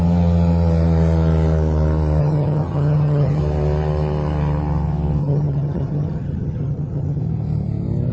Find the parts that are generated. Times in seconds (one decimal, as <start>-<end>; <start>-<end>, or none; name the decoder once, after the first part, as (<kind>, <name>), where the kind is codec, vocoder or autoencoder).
2.2-3.4 (vocoder, HiFi-GAN); 5.2-7.2